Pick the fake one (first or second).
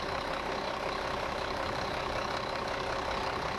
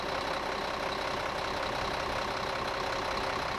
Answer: first